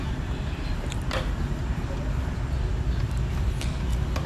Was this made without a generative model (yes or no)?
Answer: yes